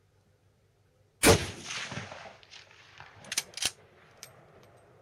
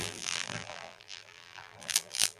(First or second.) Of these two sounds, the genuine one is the first